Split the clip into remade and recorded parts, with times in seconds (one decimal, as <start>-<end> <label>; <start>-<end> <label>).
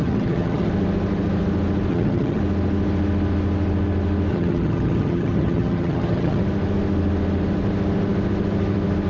0.0-0.7 remade; 0.7-1.9 recorded; 1.9-2.4 remade; 2.4-4.3 recorded; 4.3-6.4 remade; 6.4-9.1 recorded